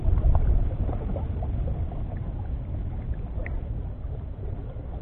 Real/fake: real